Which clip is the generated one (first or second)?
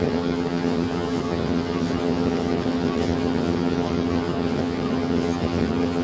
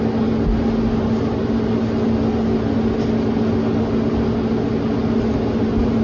first